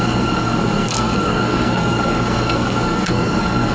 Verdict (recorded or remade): remade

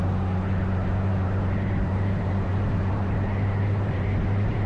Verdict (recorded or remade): remade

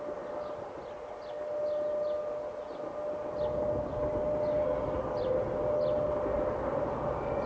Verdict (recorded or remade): recorded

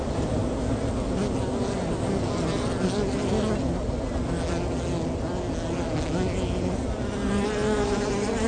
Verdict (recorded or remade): recorded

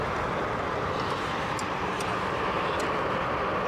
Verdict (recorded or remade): recorded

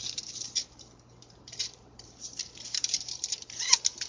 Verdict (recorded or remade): remade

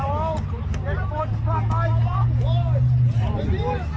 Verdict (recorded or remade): recorded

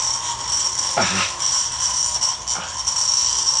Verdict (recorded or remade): recorded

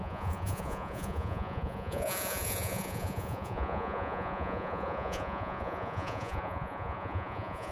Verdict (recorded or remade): remade